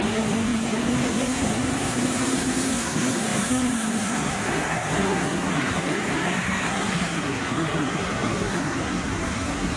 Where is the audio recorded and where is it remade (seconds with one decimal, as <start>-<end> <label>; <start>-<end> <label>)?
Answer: 0.0-9.8 remade